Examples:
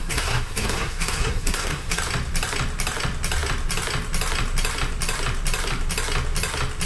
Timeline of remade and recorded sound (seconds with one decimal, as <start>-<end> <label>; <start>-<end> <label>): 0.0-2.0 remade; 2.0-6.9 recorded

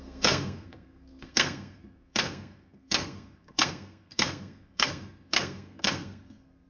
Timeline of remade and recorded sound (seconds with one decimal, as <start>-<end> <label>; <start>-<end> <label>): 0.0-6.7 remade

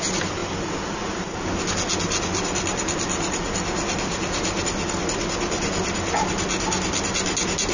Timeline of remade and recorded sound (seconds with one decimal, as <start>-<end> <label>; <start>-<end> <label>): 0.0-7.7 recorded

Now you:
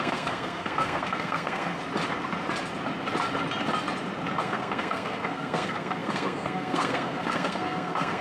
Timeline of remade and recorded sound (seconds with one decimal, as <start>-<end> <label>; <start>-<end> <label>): 0.0-1.8 remade; 1.8-4.4 recorded; 4.4-8.2 remade

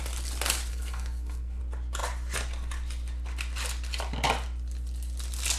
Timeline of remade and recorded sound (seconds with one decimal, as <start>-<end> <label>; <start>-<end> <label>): 0.0-0.7 recorded; 0.7-1.6 remade; 1.6-5.6 recorded